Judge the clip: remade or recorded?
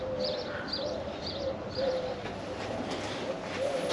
remade